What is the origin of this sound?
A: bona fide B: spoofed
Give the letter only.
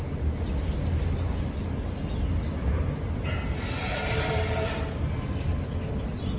A